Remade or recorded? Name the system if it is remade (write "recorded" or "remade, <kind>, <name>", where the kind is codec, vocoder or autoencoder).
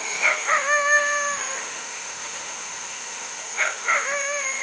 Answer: remade, autoencoder, DAC-VAE